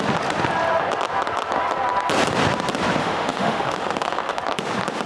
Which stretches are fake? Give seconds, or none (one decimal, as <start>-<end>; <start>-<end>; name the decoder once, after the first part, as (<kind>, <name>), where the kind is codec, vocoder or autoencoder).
3.0-4.4 (autoencoder, DAC-VAE)